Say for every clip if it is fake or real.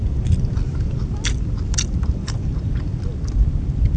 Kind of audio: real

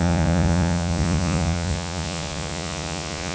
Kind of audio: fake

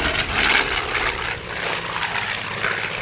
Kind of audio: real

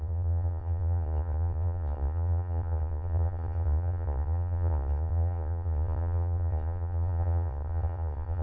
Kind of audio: fake